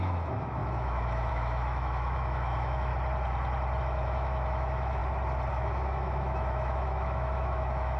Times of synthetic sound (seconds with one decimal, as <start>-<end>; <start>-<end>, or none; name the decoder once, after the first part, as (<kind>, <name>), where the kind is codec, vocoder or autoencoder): 0.0-2.9 (autoencoder, DAC-VAE); 3.8-5.0; 5.5-8.0